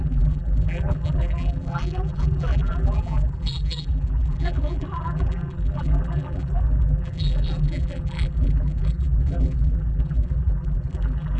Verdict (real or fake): fake